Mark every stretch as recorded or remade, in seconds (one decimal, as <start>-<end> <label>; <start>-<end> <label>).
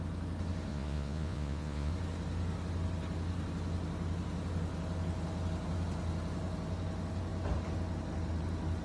0.0-0.7 recorded; 0.7-1.9 remade; 1.9-8.8 recorded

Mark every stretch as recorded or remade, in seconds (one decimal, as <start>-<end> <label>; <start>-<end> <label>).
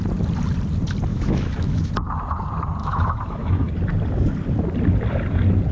0.0-1.1 recorded; 1.1-1.9 remade; 1.9-2.8 recorded; 2.8-3.7 remade; 3.7-5.7 recorded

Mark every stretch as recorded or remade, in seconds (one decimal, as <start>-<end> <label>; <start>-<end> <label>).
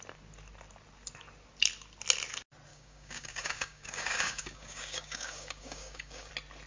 0.0-2.7 recorded; 2.7-6.3 remade; 6.3-6.7 recorded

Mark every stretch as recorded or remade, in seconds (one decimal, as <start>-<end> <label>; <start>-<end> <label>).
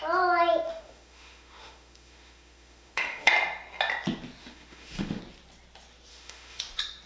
0.0-0.7 recorded; 0.7-3.3 remade; 3.3-4.4 recorded; 4.4-5.2 remade; 5.2-6.1 recorded; 6.1-6.6 remade; 6.6-7.1 recorded